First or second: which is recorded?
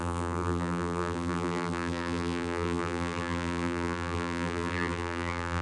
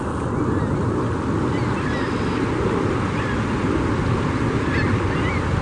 second